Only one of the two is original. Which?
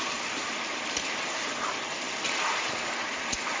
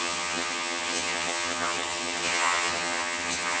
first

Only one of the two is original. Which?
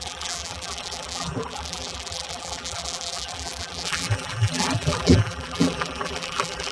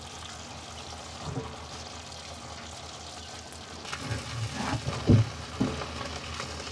second